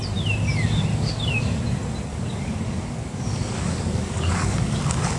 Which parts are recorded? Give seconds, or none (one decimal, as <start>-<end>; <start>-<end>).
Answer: 0.0-0.9; 1.6-2.1

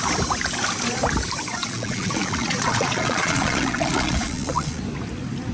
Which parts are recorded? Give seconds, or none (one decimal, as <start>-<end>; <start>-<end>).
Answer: 0.0-1.5; 4.8-5.5

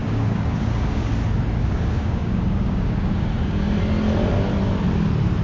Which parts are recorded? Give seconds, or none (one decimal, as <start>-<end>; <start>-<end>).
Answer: 1.1-1.6; 3.7-5.4

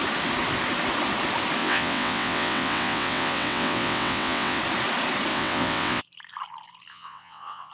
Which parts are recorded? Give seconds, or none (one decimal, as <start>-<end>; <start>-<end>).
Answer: 0.0-1.6; 4.6-5.3; 6.0-6.9

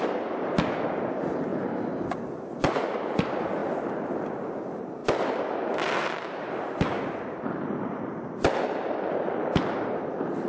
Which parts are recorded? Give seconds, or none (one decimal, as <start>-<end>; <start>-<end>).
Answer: 0.0-5.0; 8.1-10.5

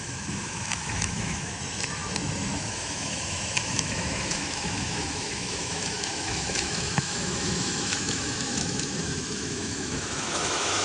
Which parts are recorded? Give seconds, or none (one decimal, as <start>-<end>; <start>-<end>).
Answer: none

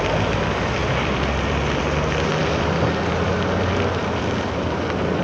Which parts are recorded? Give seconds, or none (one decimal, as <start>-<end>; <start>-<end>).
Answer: 0.0-0.8; 1.8-2.4; 3.3-4.0

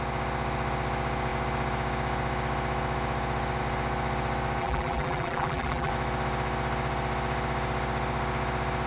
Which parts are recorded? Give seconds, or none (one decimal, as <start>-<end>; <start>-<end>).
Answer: 0.0-4.6; 5.9-8.9